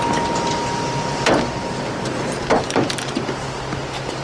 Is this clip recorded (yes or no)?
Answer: yes